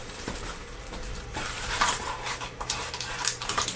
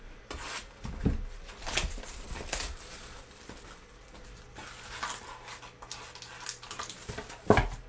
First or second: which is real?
second